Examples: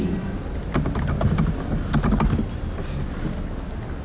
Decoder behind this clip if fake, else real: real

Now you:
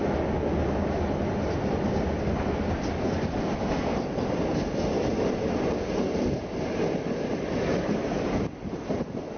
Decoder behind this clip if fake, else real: real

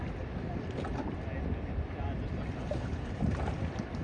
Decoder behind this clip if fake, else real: real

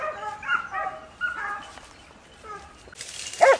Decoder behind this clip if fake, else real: real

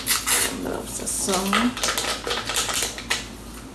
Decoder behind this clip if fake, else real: real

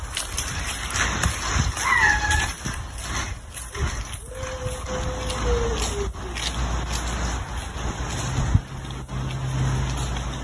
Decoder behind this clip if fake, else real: real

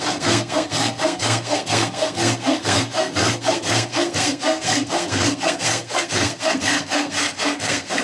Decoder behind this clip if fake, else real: fake, codec, SNAC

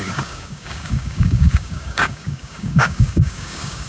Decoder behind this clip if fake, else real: fake, codec, DAC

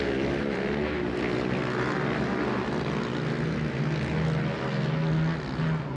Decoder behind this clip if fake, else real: real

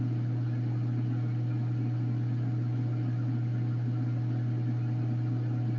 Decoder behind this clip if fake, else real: real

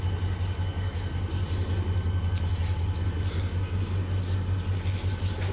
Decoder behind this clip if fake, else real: real